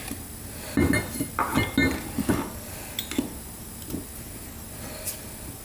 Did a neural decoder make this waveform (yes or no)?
no